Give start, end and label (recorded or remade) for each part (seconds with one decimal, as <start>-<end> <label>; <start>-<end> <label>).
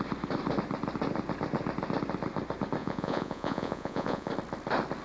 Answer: 0.0-2.8 recorded; 2.8-4.3 remade; 4.3-5.0 recorded